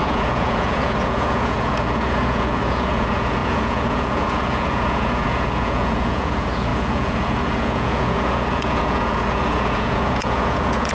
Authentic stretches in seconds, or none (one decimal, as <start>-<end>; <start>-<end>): none